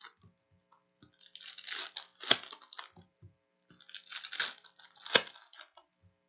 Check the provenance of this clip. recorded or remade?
recorded